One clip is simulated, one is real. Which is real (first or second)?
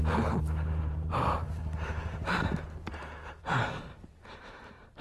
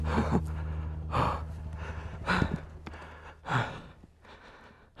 second